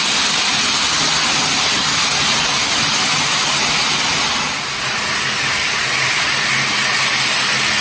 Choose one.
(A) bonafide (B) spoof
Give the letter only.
A